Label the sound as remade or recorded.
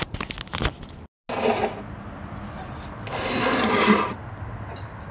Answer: recorded